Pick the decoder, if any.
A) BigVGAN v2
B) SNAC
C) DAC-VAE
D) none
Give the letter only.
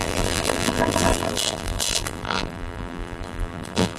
A